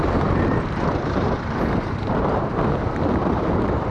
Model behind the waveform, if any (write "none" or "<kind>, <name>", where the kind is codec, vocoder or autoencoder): vocoder, BigVGAN v2